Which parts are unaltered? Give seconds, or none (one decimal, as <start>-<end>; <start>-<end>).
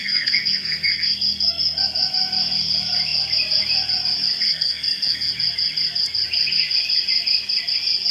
1.8-4.4; 5.3-8.1